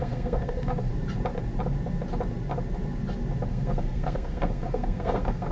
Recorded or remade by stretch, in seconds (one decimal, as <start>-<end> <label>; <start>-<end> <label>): 0.0-0.9 remade; 0.9-3.5 recorded; 3.5-5.5 remade